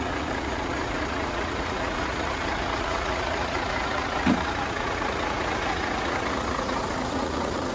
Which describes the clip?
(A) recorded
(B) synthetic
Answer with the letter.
B